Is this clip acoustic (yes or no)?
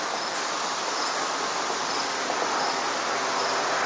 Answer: yes